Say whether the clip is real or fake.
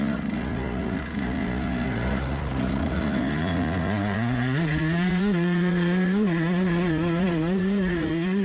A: fake